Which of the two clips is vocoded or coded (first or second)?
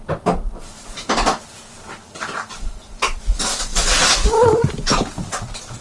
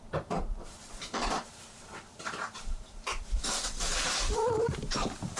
second